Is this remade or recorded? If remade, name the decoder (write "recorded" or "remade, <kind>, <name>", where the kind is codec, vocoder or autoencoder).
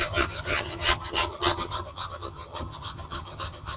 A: remade, vocoder, HiFi-GAN